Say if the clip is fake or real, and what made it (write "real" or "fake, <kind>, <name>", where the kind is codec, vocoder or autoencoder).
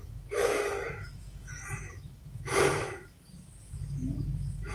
fake, autoencoder, DAC-VAE